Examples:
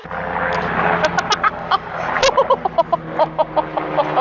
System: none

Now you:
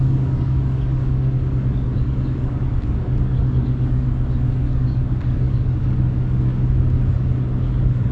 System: codec, DAC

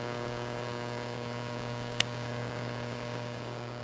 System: codec, DAC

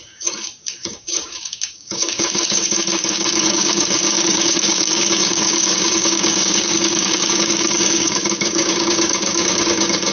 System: codec, DAC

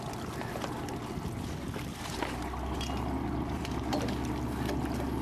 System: none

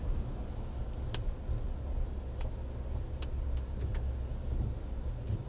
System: none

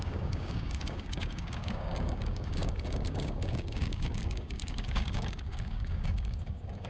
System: codec, DAC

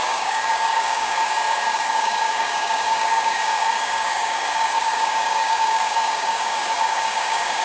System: codec, DAC